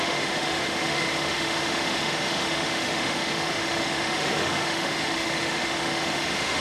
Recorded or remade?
remade